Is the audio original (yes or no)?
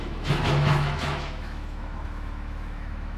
no